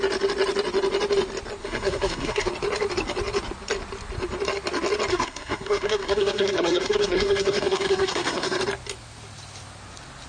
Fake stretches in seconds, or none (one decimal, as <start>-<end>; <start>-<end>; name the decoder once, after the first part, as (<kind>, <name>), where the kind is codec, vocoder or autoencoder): 1.6-2.5 (codec, SNAC); 5.1-8.6